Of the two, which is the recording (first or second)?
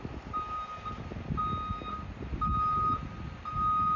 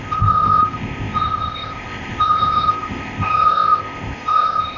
first